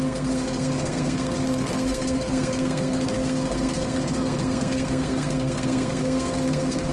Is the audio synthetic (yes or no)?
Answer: yes